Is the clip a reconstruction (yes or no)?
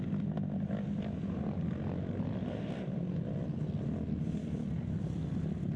no